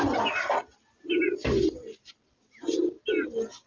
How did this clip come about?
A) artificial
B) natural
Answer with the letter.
B